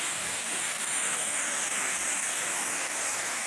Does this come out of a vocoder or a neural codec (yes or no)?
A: yes